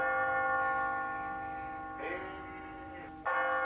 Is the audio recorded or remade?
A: recorded